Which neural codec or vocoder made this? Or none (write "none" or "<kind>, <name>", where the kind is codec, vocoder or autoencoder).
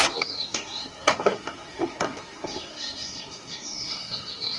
codec, SNAC